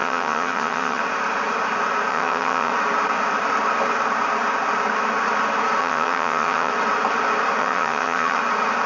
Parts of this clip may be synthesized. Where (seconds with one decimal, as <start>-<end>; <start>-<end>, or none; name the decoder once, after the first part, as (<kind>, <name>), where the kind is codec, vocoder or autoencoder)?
0.0-1.0 (vocoder, HiFi-GAN); 2.1-2.7; 5.8-6.7; 7.6-8.4